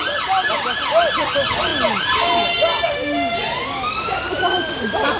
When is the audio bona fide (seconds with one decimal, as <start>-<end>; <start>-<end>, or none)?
0.0-5.2

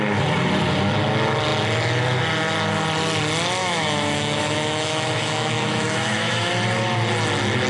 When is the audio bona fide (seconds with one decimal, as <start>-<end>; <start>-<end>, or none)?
0.0-3.6; 6.5-7.7

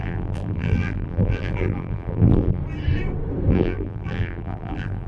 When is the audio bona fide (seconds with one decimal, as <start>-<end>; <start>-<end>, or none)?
2.6-3.5

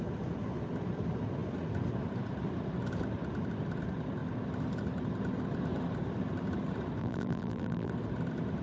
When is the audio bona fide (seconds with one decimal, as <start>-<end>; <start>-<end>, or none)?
0.0-7.0; 7.9-8.6

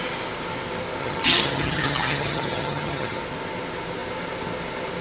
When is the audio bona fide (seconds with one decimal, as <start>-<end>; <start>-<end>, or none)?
0.0-1.0; 3.2-5.0